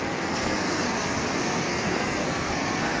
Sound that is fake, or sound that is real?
fake